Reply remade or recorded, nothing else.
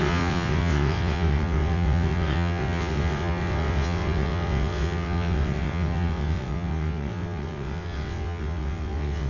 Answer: remade